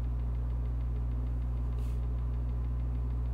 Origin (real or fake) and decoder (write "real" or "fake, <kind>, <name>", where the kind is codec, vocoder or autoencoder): real